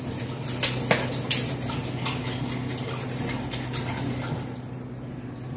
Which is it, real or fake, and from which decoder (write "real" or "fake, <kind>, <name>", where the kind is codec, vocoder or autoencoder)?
real